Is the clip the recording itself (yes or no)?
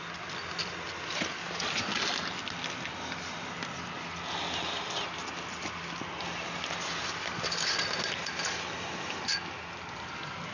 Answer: yes